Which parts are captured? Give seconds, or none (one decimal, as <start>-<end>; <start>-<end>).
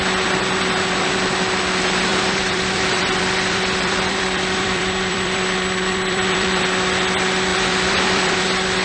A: 0.0-2.1; 6.6-7.5; 8.4-8.8